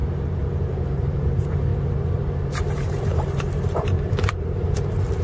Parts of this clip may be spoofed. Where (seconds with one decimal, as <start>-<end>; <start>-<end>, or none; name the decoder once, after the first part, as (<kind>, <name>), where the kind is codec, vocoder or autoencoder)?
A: 0.7-1.7 (vocoder, BigVGAN v2); 2.6-5.2